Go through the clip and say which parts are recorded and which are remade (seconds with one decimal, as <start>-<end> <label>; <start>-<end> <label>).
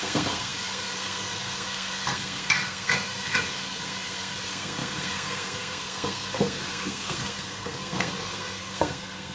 0.0-9.3 remade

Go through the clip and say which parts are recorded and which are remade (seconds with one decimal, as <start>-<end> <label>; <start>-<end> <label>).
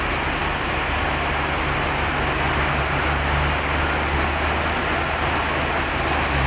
0.0-6.5 recorded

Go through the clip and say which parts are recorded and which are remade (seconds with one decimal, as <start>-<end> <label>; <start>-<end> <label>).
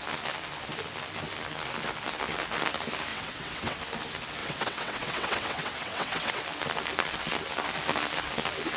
0.0-3.1 recorded; 3.1-3.8 remade; 3.8-4.4 recorded; 4.4-6.4 remade; 6.4-8.8 recorded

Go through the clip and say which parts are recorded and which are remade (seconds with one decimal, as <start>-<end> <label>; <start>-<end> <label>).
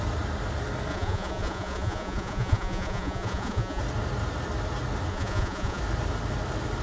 0.0-0.9 recorded; 0.9-3.8 remade; 3.8-5.1 recorded; 5.1-5.8 remade; 5.8-6.8 recorded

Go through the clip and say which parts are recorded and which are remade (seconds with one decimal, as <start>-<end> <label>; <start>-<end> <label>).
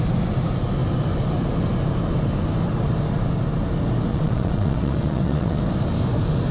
0.0-4.1 recorded; 4.1-5.6 remade; 5.6-6.5 recorded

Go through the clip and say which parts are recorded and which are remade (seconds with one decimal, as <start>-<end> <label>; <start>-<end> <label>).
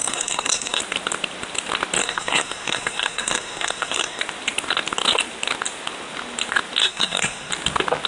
0.0-0.8 remade; 0.8-2.0 recorded; 2.0-4.2 remade; 4.2-6.8 recorded; 6.8-7.5 remade; 7.5-8.1 recorded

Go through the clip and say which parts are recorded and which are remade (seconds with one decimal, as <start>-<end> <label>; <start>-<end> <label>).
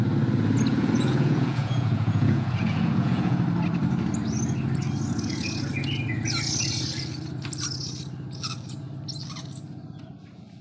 0.0-0.7 recorded; 0.7-3.4 remade; 3.4-10.6 recorded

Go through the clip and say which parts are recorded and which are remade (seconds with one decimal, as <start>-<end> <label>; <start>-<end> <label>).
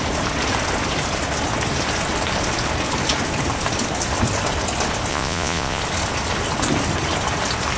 0.0-5.1 recorded; 5.1-5.8 remade; 5.8-7.8 recorded